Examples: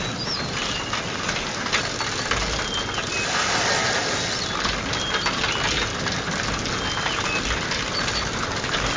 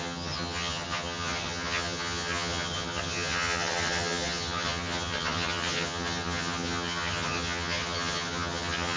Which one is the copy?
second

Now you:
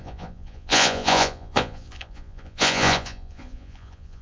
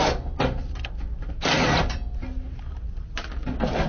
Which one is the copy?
first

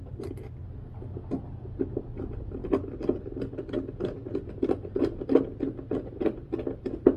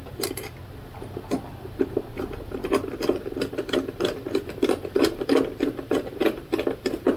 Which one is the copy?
second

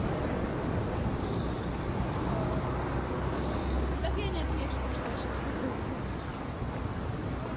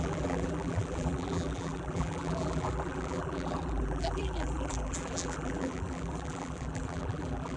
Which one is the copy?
second